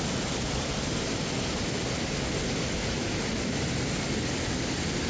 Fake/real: real